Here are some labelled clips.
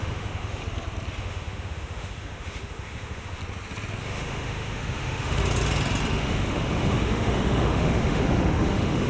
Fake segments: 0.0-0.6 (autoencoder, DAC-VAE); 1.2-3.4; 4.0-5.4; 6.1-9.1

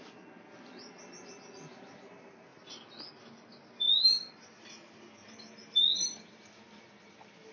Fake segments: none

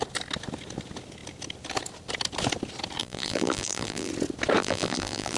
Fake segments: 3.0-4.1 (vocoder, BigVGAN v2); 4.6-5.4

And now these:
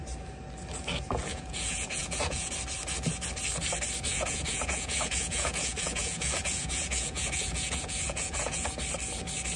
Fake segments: 1.3-2.5 (vocoder, Vocos); 4.1-8.7

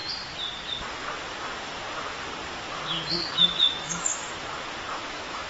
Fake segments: 3.1-4.2 (autoencoder, DAC-VAE); 4.9-5.5

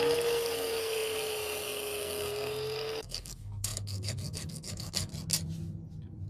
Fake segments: 0.0-5.1 (codec, SNAC)

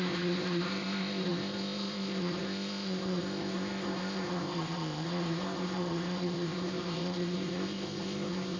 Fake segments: 0.0-8.6 (codec, ZipCodec)

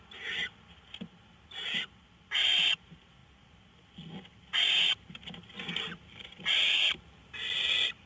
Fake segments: none